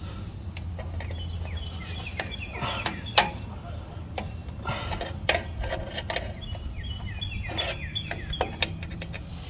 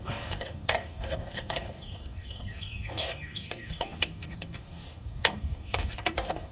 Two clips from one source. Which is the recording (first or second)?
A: first